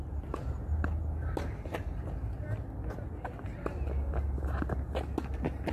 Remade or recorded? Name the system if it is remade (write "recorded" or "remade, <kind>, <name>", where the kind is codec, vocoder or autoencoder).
recorded